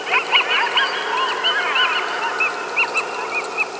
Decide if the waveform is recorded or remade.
recorded